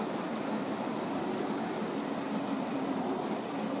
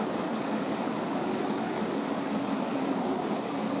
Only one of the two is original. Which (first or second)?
first